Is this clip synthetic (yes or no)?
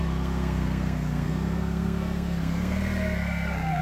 yes